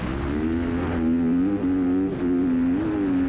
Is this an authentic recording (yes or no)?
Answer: yes